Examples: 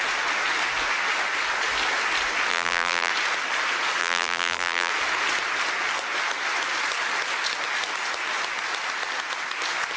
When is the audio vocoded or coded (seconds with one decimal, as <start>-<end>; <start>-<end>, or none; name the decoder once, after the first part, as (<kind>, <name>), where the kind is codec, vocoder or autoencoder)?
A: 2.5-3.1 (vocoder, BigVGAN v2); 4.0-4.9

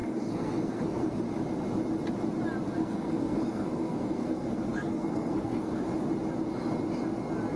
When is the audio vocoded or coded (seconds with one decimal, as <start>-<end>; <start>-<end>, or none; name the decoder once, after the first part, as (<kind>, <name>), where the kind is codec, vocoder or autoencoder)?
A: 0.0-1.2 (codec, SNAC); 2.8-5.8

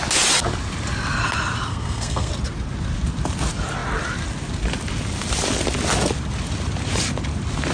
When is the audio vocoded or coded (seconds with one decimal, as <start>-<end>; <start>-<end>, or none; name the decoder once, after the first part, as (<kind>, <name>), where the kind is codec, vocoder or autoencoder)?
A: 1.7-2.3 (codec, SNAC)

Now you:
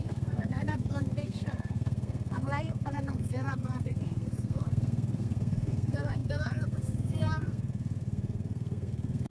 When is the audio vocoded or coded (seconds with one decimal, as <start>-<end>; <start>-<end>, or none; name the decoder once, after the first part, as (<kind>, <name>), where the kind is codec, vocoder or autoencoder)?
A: 0.0-9.3 (codec, SNAC)